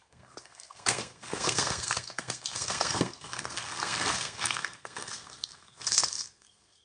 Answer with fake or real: fake